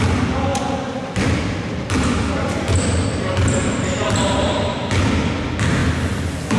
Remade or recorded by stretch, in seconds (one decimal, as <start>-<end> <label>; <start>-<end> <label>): 0.0-6.6 recorded